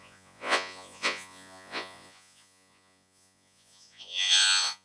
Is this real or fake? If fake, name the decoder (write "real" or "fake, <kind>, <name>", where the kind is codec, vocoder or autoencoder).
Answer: fake, vocoder, Vocos